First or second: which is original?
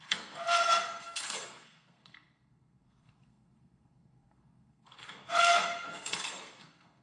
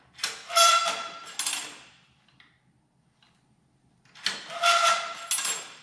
second